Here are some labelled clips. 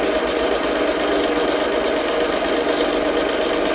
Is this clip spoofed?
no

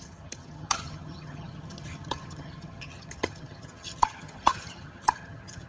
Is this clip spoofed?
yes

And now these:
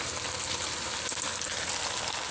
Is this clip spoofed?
no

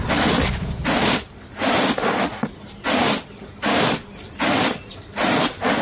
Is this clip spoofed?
no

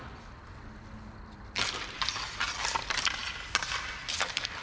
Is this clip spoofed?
no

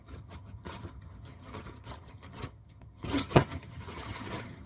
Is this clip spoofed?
yes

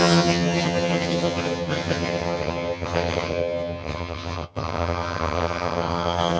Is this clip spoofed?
yes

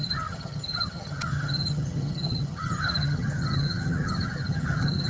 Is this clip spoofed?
yes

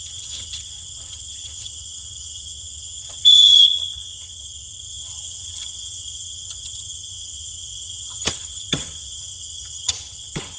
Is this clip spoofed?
yes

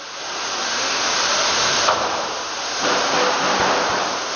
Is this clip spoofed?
no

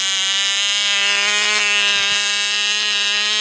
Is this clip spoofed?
no